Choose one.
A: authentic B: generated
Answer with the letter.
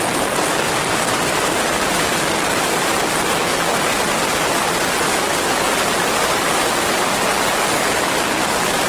A